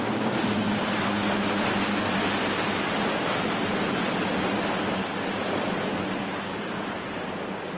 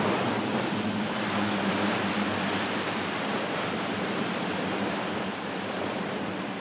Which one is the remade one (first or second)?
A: second